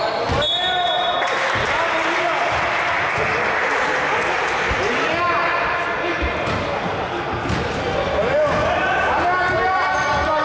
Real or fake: real